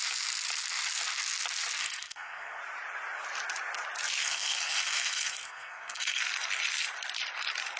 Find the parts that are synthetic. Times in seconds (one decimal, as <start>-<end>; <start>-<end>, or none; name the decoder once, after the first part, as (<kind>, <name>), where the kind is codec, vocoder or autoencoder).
1.8-2.6 (codec, SNAC); 4.2-6.2